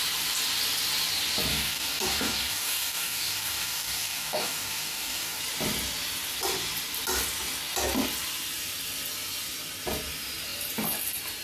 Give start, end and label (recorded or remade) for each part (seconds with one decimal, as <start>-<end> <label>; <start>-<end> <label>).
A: 0.0-1.5 recorded; 1.5-5.4 remade; 5.4-11.4 recorded